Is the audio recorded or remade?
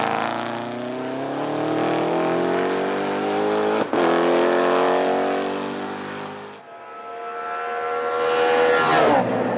recorded